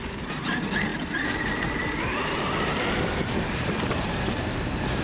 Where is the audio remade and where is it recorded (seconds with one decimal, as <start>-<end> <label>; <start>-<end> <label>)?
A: 0.0-5.0 recorded